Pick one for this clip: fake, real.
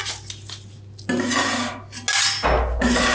real